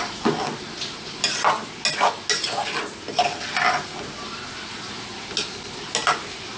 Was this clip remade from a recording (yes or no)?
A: no